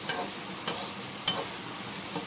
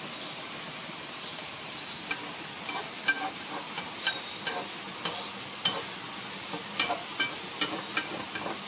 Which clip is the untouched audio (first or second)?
second